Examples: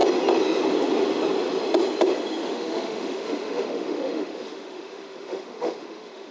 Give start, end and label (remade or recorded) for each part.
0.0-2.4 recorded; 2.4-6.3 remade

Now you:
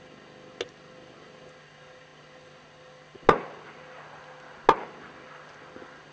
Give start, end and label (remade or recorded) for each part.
0.0-6.1 recorded

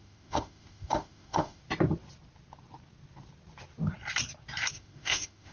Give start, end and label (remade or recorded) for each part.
0.0-1.6 remade; 1.6-4.7 recorded; 4.7-5.5 remade

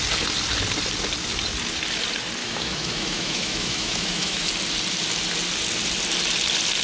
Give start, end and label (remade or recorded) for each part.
0.0-2.4 recorded; 2.4-4.5 remade; 4.5-6.8 recorded

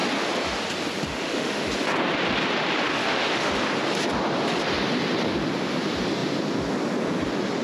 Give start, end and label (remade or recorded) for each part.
0.0-1.1 recorded; 1.1-1.6 remade; 1.6-2.9 recorded; 2.9-3.5 remade; 3.5-7.6 recorded

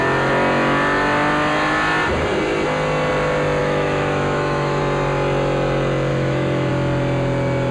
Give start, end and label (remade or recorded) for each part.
0.0-3.6 recorded; 3.6-4.8 remade; 4.8-6.1 recorded; 6.1-6.7 remade; 6.7-7.7 recorded